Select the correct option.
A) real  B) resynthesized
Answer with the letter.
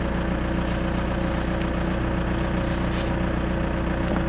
A